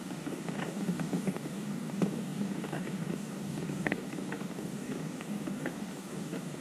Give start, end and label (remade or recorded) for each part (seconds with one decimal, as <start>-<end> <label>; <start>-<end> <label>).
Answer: 0.0-6.6 remade